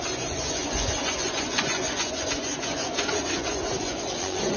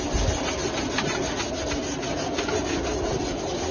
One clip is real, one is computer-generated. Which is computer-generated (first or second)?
first